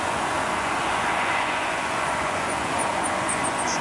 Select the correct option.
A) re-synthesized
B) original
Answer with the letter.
A